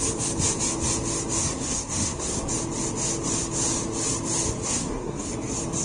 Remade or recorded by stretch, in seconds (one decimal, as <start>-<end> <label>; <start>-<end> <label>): 0.0-1.4 recorded; 1.4-2.5 remade; 2.5-4.6 recorded; 4.6-5.3 remade; 5.3-5.8 recorded